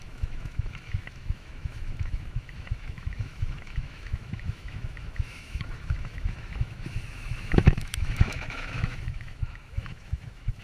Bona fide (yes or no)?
no